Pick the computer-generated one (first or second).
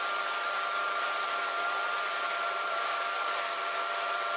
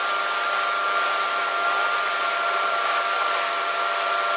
first